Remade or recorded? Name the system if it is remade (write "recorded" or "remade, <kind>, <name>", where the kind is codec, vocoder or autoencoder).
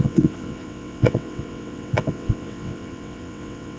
remade, vocoder, WaveNeXt